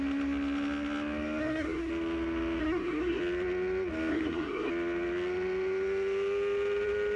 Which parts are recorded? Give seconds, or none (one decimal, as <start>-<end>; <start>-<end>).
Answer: 0.0-1.4; 1.9-2.6; 3.2-4.1; 4.7-7.2